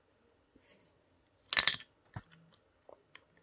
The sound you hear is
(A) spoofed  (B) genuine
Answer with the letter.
B